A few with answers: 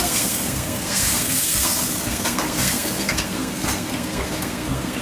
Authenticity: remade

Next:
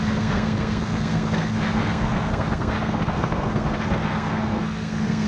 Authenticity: remade